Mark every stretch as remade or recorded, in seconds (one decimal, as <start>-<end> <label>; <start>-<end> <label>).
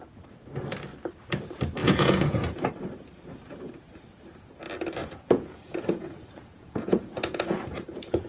0.0-1.8 recorded; 1.8-2.7 remade; 2.7-5.0 recorded; 5.0-8.3 remade